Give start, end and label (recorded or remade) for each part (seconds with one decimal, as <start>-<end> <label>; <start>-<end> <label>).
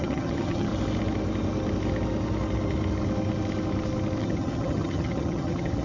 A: 0.0-0.7 remade; 0.7-4.2 recorded; 4.2-5.8 remade